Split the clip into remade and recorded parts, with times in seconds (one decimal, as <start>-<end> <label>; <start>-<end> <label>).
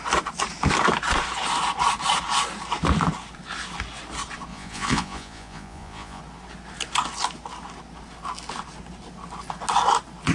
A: 0.0-4.5 recorded; 4.5-6.2 remade; 6.2-10.3 recorded